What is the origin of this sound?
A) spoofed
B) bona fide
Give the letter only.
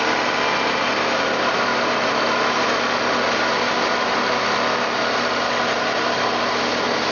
B